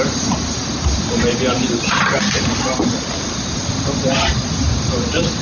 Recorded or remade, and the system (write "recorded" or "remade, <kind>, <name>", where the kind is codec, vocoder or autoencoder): recorded